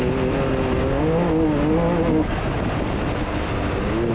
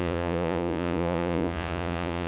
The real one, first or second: first